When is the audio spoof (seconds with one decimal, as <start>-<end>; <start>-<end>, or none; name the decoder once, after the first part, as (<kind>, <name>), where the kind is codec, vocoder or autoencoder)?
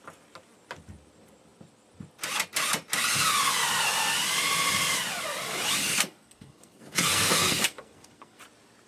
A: 5.8-8.4 (codec, SNAC)